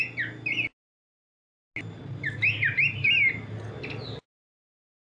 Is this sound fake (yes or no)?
no